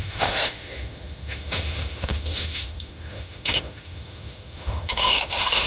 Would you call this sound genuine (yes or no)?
no